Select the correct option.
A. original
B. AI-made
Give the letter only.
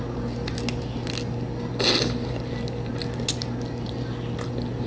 A